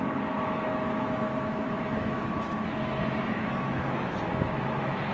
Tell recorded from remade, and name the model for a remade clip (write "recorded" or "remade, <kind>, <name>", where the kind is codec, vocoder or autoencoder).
remade, autoencoder, DAC-VAE